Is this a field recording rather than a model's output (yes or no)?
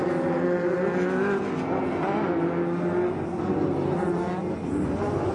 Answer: yes